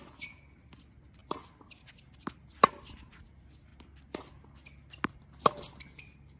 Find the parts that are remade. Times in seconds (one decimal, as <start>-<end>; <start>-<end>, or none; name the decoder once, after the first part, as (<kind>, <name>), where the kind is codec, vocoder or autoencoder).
none